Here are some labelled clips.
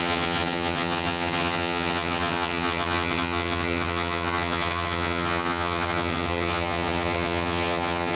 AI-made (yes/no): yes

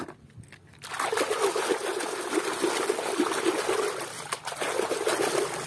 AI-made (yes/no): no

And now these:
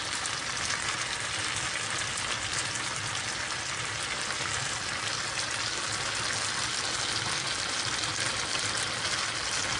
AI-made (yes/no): no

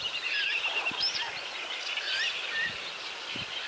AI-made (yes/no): no